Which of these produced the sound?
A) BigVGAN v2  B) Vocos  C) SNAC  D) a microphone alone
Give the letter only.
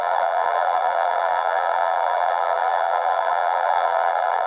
A